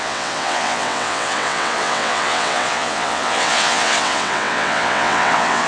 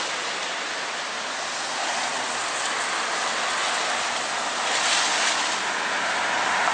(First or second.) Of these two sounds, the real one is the second